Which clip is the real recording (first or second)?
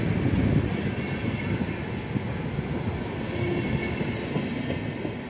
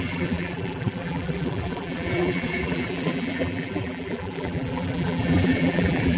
first